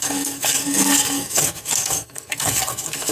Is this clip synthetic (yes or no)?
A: yes